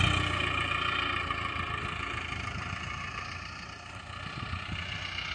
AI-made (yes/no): no